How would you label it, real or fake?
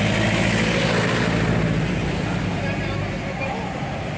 real